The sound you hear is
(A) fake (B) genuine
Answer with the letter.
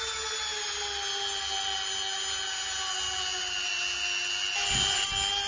B